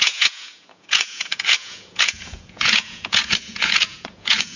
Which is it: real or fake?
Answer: fake